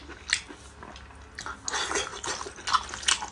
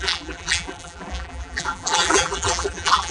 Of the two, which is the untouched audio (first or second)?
first